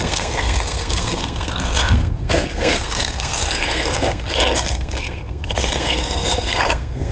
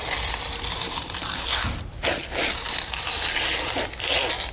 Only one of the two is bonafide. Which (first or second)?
second